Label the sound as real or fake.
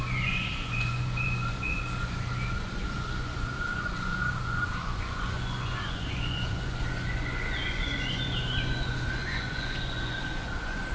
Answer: fake